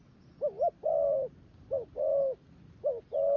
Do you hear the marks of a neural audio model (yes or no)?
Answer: no